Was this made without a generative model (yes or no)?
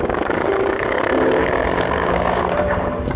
no